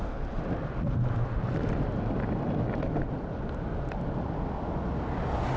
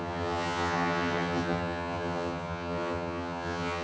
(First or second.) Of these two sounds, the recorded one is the first